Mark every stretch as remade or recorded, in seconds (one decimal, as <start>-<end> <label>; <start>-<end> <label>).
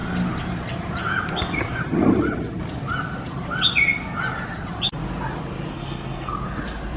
0.0-5.7 recorded; 5.7-6.3 remade; 6.3-7.0 recorded